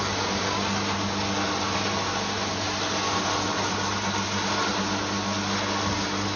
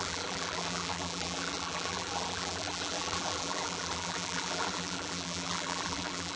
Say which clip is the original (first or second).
first